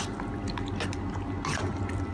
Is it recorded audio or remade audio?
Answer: recorded